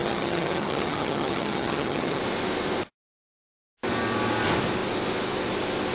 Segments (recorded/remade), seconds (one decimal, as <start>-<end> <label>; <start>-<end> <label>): 0.0-2.2 remade; 2.2-5.9 recorded